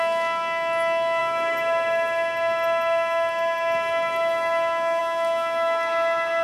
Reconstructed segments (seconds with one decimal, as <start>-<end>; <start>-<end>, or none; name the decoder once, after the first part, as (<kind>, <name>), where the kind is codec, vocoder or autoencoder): none